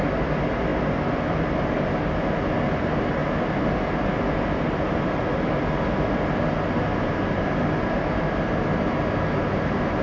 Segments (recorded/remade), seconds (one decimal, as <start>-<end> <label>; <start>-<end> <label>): 0.0-10.0 recorded

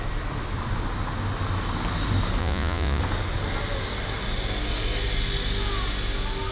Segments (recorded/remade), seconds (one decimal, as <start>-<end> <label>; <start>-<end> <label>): 0.0-2.4 recorded; 2.4-3.0 remade; 3.0-6.5 recorded